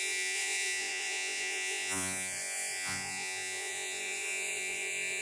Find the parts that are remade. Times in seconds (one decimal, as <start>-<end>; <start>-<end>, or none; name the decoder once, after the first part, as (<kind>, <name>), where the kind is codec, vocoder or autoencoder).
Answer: 0.0-5.2 (vocoder, Vocos)